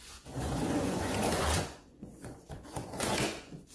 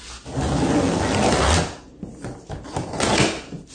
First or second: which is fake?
first